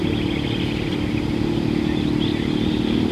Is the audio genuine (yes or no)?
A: yes